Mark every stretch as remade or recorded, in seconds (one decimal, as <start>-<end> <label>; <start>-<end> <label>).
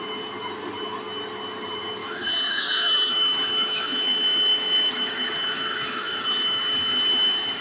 0.0-2.0 recorded; 2.0-6.6 remade; 6.6-7.6 recorded